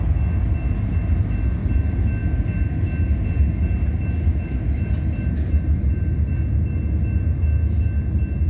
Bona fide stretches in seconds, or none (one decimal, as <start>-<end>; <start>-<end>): 0.0-8.5